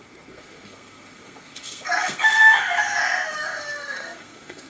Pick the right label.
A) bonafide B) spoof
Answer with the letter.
B